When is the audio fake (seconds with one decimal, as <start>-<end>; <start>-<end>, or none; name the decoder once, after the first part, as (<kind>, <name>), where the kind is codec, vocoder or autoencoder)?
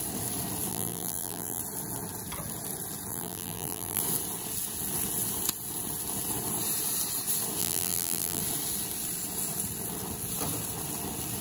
0.7-1.6 (vocoder, BigVGAN v2); 3.1-4.0; 7.6-8.4